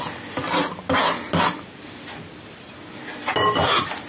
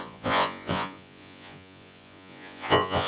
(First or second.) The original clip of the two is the first